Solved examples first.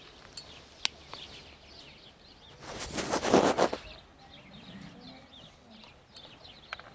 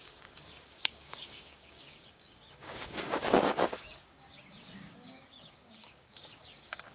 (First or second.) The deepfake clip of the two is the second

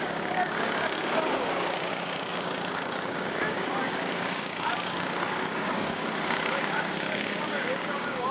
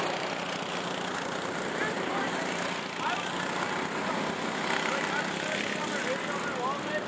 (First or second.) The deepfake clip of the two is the first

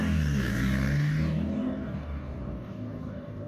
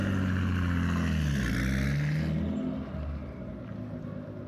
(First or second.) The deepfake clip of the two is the first